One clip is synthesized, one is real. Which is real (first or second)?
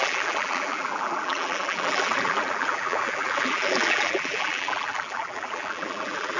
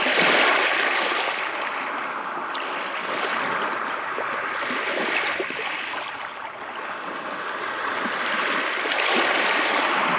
second